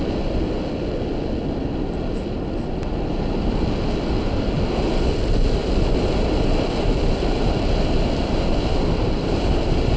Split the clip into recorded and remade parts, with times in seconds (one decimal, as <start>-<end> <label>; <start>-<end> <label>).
0.0-10.0 recorded